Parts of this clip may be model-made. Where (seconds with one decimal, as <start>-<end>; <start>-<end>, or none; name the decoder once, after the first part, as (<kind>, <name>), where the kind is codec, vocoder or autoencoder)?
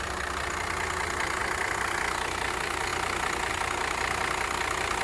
1.4-2.5 (vocoder, BigVGAN v2)